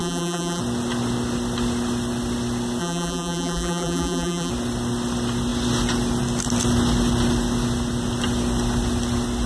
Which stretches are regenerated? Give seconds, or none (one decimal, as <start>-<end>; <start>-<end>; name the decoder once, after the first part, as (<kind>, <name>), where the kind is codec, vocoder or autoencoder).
0.0-0.6 (vocoder, BigVGAN v2); 2.8-4.5